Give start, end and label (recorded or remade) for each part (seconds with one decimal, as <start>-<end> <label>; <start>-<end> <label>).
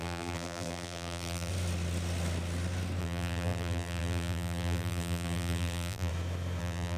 0.0-1.5 remade; 1.5-3.0 recorded; 3.0-6.1 remade; 6.1-6.6 recorded; 6.6-7.0 remade